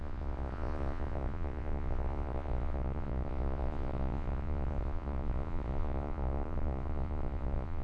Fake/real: fake